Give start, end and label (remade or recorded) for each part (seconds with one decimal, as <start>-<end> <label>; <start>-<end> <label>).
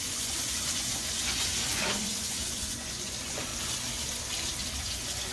0.0-3.5 remade; 3.5-4.7 recorded; 4.7-5.3 remade